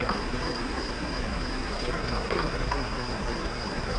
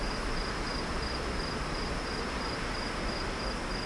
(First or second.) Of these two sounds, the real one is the second